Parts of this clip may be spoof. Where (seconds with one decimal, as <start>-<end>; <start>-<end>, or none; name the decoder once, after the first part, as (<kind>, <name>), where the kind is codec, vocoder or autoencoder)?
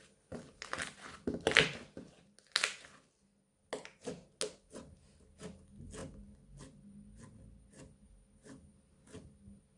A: none